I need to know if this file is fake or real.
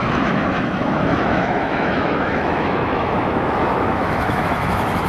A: fake